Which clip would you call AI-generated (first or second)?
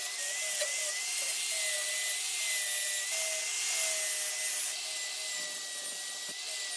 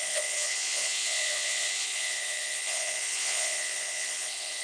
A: second